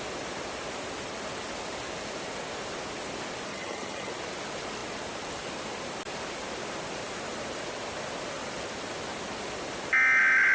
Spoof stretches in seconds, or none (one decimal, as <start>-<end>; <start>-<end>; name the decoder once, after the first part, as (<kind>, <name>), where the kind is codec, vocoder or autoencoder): 3.5-4.1 (vocoder, HiFi-GAN)